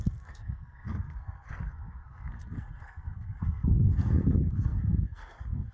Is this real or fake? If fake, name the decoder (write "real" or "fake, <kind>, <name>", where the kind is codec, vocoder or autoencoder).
fake, codec, SNAC